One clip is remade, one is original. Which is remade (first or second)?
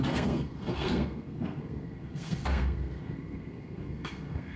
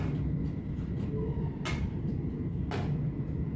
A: first